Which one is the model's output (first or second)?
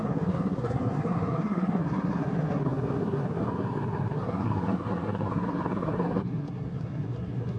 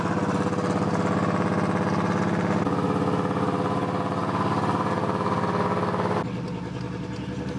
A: first